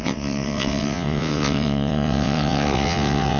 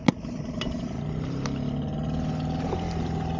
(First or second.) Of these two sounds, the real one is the second